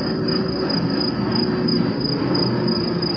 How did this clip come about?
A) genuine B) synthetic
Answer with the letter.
A